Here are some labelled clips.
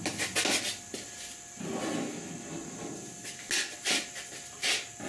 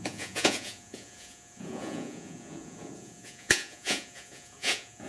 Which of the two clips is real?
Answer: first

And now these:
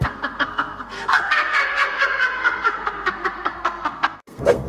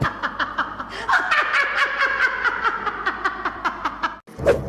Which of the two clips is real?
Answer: second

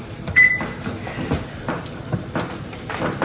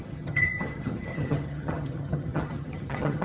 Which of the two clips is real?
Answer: first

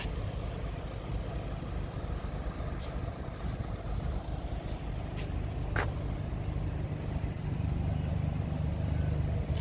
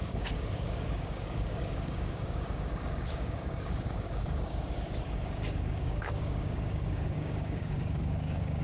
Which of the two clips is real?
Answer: first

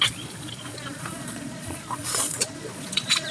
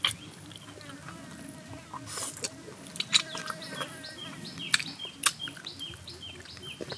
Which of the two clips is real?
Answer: second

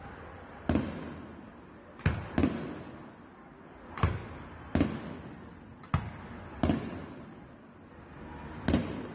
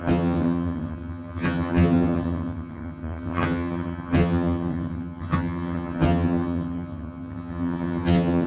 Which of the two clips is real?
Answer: first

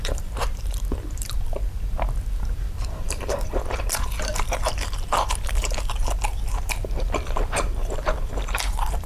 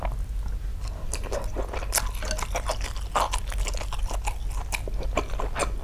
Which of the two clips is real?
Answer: second